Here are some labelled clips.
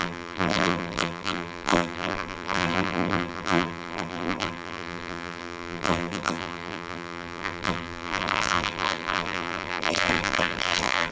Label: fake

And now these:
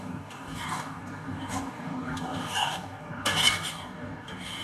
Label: fake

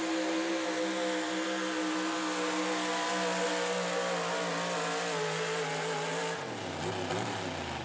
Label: real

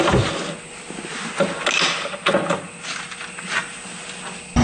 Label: real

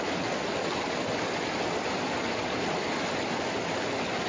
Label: real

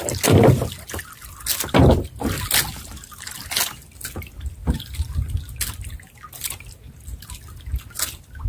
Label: real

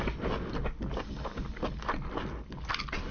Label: real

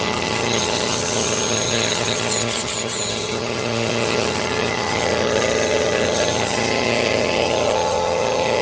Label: fake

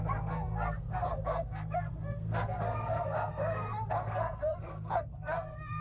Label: fake